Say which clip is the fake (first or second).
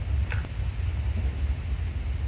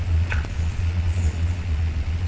second